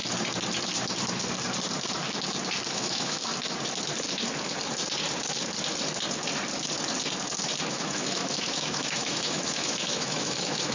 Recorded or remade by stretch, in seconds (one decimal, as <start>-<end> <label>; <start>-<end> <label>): 0.0-2.7 recorded; 2.7-3.3 remade; 3.3-7.7 recorded; 7.7-10.7 remade